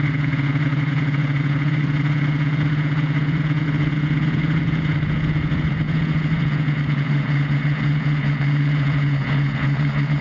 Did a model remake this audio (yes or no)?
yes